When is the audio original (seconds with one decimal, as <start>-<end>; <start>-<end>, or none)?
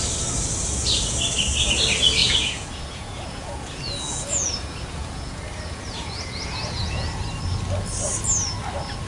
0.0-2.2; 7.2-9.1